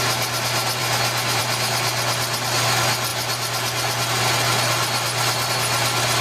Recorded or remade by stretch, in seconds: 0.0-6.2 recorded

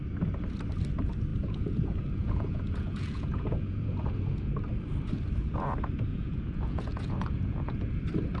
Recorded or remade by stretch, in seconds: 0.0-1.3 recorded; 1.3-4.5 remade; 4.5-6.1 recorded; 6.1-7.9 remade; 7.9-8.4 recorded

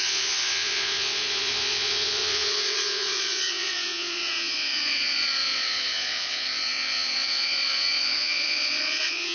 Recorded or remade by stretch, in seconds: 0.0-9.3 remade

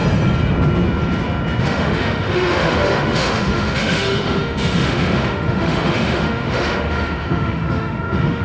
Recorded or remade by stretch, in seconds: 0.0-1.6 recorded; 1.6-8.4 remade

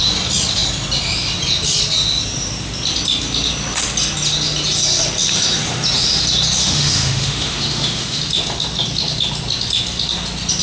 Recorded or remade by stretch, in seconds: 0.0-6.6 recorded; 6.6-8.2 remade; 8.2-10.6 recorded